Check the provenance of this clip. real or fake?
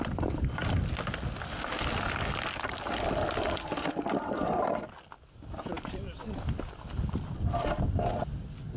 real